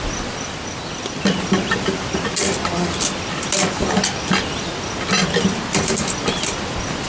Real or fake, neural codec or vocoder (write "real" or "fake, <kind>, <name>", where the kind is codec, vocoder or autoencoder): real